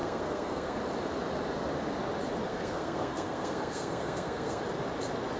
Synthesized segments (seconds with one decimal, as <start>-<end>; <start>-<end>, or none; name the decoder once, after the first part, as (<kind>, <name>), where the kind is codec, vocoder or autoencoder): 0.0-0.8 (codec, SNAC); 2.5-4.6